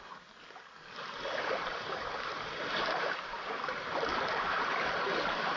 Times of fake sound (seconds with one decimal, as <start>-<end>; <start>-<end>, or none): none